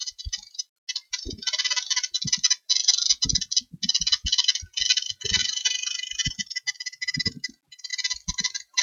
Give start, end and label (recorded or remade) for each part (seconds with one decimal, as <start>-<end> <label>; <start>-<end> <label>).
0.0-5.4 recorded; 5.4-6.5 remade; 6.5-8.8 recorded